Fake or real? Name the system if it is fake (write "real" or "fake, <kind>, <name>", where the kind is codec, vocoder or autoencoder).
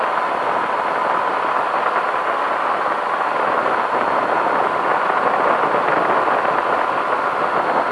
real